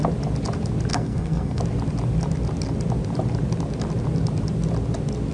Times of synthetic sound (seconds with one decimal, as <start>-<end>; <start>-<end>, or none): 0.9-1.6